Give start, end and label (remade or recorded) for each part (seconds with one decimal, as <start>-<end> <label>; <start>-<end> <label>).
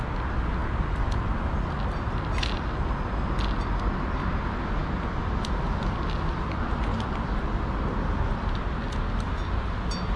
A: 0.0-10.2 recorded